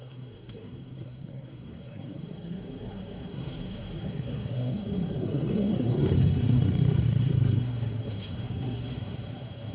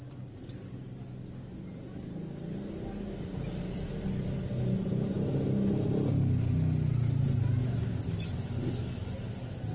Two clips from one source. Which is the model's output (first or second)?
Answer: first